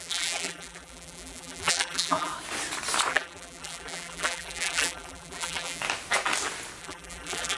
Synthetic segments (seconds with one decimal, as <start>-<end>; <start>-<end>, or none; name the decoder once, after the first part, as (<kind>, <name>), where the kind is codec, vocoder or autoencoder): 0.0-2.3 (vocoder, BigVGAN v2); 3.1-5.8; 6.8-7.6